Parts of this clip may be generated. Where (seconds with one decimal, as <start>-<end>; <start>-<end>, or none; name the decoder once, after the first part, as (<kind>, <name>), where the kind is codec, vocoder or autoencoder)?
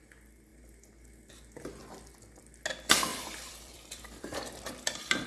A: 3.1-5.3 (vocoder, BigVGAN v2)